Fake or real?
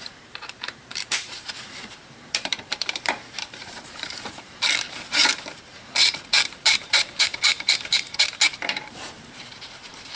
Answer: fake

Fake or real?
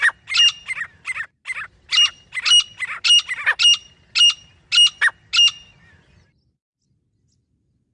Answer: real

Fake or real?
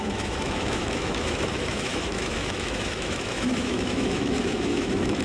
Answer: fake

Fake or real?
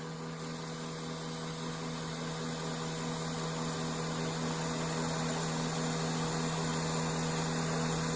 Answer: real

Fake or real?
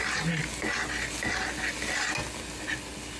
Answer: real